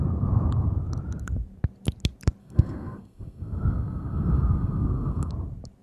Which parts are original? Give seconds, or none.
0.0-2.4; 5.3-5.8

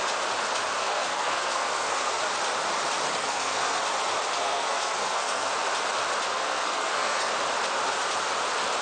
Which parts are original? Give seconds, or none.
0.0-0.8; 2.2-3.2; 3.8-4.4; 5.5-6.3; 7.3-8.8

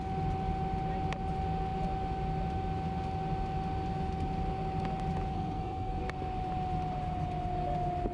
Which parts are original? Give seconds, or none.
0.0-5.3; 6.0-8.1

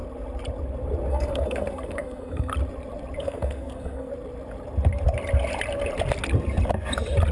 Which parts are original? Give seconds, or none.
0.0-1.1; 2.5-3.2; 4.1-7.3

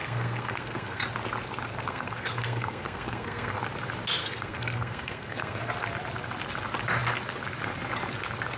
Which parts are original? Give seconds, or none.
1.0-1.7; 3.6-4.2; 5.7-8.6